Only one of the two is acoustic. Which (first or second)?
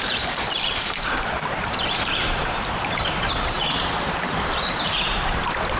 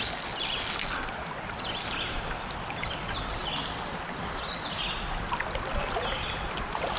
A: second